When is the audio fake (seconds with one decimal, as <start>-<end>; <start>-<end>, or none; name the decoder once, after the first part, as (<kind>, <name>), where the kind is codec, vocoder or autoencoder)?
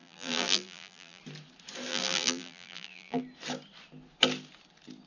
0.0-1.2 (vocoder, BigVGAN v2); 1.9-3.2